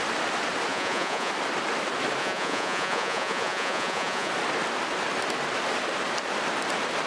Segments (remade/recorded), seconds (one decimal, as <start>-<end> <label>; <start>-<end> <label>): 0.0-0.7 recorded; 0.7-1.3 remade; 1.3-2.2 recorded; 2.2-4.3 remade; 4.3-7.1 recorded